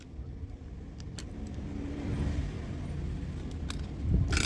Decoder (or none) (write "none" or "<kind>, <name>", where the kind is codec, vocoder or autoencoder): none